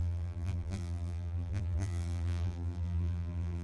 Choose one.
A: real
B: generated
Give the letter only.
B